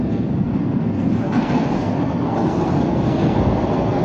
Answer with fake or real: fake